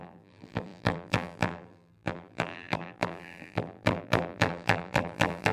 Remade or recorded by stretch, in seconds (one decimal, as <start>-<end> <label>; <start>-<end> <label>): 0.0-5.5 remade